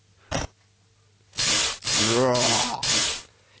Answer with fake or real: real